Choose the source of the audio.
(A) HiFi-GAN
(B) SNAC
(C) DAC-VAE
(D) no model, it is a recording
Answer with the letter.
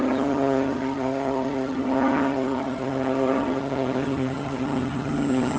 A